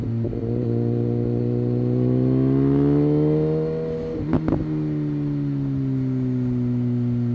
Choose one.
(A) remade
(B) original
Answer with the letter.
B